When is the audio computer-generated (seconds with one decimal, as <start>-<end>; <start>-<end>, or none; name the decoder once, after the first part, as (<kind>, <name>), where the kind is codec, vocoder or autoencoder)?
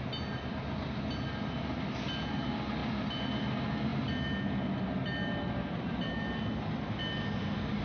none